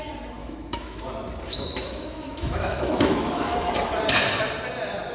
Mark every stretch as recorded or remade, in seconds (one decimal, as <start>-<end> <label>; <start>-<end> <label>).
0.0-0.4 recorded; 0.4-1.0 remade; 1.0-1.5 recorded; 1.5-3.7 remade; 3.7-5.1 recorded